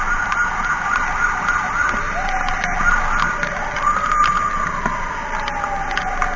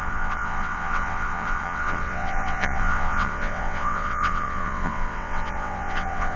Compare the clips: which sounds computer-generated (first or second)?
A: second